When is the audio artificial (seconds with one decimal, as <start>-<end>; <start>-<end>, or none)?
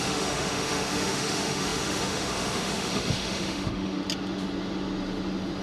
0.0-4.0